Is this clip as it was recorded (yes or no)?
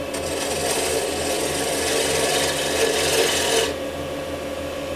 yes